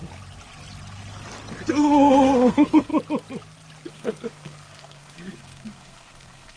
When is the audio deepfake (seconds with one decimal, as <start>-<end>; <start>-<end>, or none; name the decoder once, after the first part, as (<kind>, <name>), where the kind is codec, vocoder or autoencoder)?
1.7-2.9 (codec, SNAC); 3.9-6.6